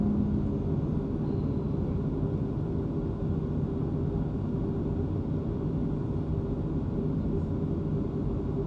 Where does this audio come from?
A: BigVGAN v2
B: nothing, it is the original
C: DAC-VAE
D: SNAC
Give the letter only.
B